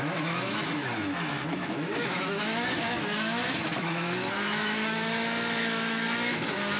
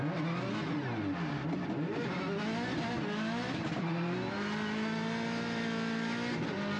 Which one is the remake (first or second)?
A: first